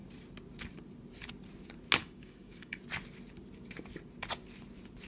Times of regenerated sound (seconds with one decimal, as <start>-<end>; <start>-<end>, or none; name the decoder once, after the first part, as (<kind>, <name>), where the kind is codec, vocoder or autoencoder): 2.0-2.8 (codec, DAC)